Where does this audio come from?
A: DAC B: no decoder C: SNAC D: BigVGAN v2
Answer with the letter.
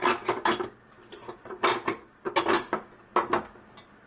B